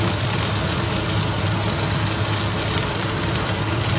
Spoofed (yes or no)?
yes